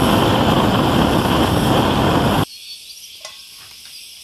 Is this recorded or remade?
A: recorded